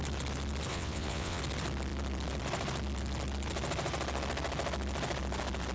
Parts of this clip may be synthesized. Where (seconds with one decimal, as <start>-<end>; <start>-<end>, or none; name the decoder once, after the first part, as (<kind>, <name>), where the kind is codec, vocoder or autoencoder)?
0.7-1.4 (vocoder, WaveNeXt)